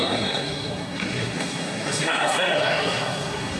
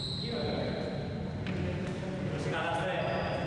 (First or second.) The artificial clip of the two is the first